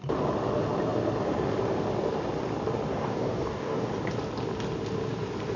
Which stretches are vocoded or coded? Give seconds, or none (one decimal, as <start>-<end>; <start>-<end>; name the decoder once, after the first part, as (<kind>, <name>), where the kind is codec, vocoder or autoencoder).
2.9-3.9 (codec, DAC)